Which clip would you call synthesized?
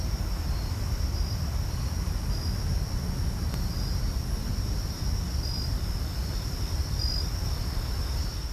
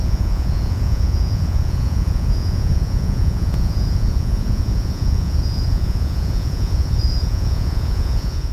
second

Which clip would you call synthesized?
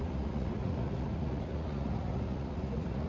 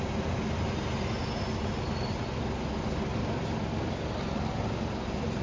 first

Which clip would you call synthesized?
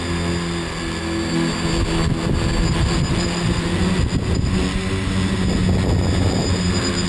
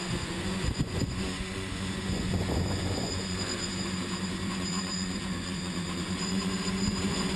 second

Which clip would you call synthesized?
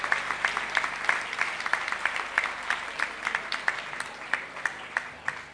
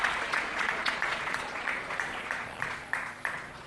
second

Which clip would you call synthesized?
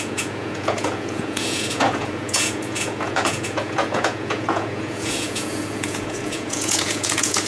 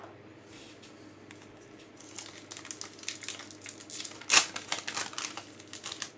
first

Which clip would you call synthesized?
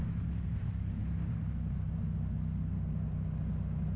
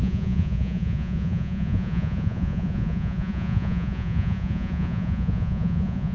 second